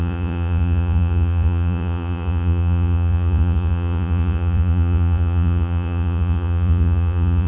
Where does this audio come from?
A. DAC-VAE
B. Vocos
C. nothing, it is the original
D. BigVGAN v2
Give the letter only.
B